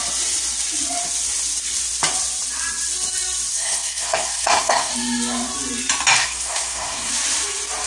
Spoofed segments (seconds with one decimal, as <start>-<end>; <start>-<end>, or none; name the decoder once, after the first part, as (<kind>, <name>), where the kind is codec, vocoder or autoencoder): 3.5-4.9 (codec, SNAC); 6.2-7.1